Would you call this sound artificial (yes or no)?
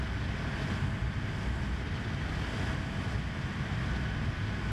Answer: no